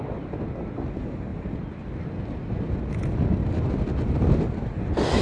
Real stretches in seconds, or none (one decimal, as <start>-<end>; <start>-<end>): 0.0-5.2